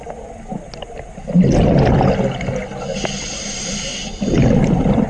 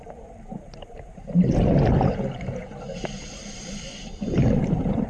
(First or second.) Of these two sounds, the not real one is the second